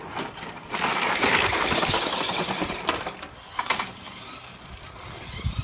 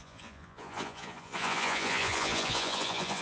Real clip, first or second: first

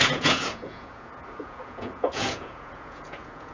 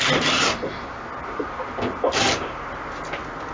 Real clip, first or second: second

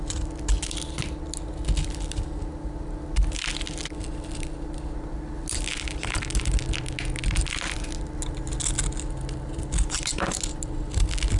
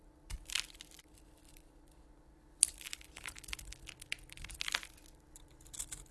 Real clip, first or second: first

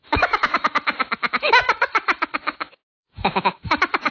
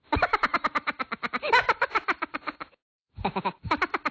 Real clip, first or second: second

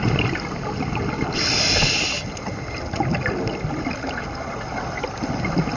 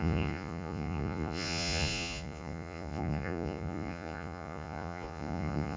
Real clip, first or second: first